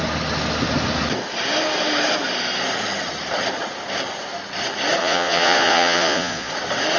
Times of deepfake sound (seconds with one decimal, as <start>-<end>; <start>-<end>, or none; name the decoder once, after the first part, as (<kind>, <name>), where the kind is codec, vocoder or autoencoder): 5.0-6.5 (vocoder, Vocos)